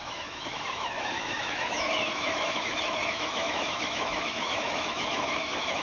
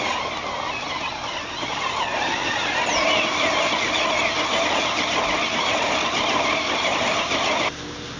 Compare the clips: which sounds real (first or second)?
second